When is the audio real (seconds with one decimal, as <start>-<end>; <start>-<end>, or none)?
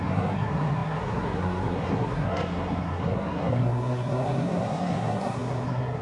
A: none